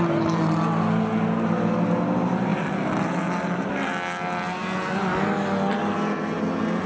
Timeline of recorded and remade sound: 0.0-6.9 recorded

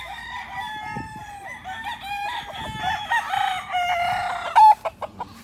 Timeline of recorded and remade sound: 0.0-5.4 recorded

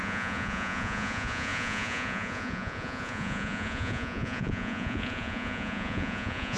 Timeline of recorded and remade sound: 0.0-6.6 remade

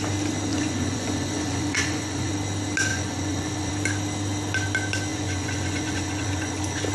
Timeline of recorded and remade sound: 0.0-0.5 recorded; 0.5-2.3 remade; 2.3-2.9 recorded; 2.9-3.7 remade; 3.7-5.1 recorded; 5.1-6.9 remade

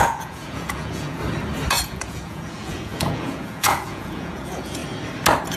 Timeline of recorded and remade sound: 0.0-1.2 remade; 1.2-1.7 recorded; 1.7-4.8 remade; 4.8-5.6 recorded

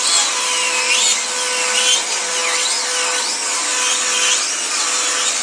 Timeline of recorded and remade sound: 0.0-5.4 recorded

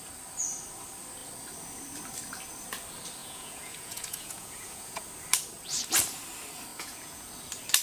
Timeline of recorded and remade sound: 0.0-3.2 recorded; 3.2-5.0 remade; 5.0-6.7 recorded; 6.7-7.3 remade; 7.3-7.8 recorded